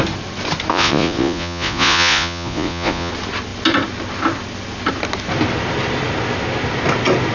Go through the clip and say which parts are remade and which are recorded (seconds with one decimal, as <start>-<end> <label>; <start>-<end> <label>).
0.0-0.7 recorded; 0.7-3.1 remade; 3.1-7.3 recorded